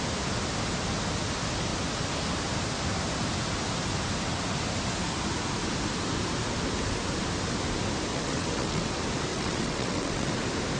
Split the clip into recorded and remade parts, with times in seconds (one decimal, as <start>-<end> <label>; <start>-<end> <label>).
0.0-8.1 recorded; 8.1-8.9 remade; 8.9-9.3 recorded; 9.3-10.3 remade; 10.3-10.8 recorded